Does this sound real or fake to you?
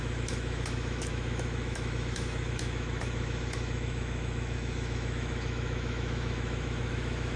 fake